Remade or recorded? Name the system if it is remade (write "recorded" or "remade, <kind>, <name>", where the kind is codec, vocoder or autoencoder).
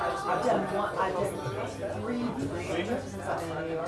recorded